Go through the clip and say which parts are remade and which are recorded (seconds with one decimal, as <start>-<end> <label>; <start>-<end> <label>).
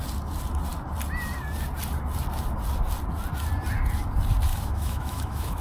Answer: 0.0-4.5 recorded; 4.5-5.6 remade